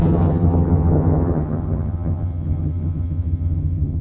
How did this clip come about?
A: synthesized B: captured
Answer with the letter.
A